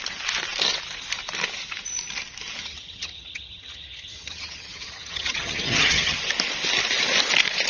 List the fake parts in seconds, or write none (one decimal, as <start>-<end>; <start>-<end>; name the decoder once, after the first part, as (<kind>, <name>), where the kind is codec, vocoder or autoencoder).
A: 2.6-6.2 (vocoder, HiFi-GAN)